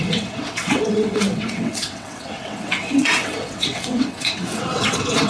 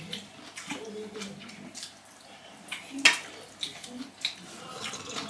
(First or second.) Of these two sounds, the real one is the second